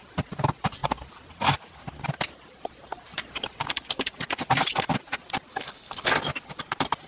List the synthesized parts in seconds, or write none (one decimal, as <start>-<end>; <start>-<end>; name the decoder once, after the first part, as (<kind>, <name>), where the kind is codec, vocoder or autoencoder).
5.5-6.1 (codec, HILCodec)